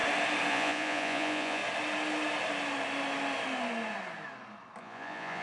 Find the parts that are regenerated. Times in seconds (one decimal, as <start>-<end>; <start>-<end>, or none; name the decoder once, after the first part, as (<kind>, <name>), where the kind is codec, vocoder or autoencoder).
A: 0.5-1.6 (vocoder, Vocos); 4.8-5.4